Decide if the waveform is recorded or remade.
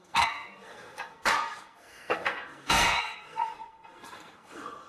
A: remade